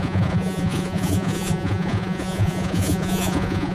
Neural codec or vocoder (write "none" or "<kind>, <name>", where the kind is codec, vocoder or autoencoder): vocoder, Vocos